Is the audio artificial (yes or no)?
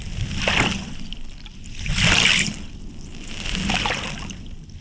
no